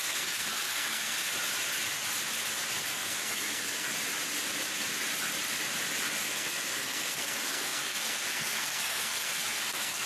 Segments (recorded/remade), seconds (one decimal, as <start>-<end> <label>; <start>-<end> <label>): 0.0-1.3 remade; 1.3-2.8 recorded; 2.8-3.9 remade; 3.9-6.2 recorded; 6.2-10.1 remade